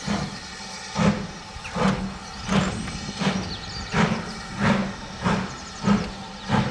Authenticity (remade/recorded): recorded